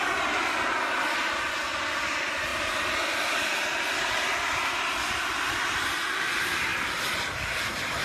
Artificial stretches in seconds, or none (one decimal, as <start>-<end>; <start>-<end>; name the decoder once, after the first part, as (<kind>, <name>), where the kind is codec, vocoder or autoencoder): none